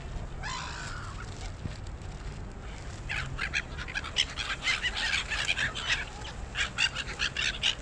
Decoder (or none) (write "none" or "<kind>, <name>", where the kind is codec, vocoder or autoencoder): none